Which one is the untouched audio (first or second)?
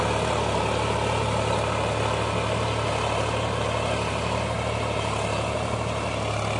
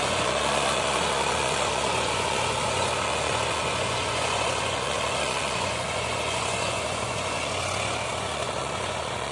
first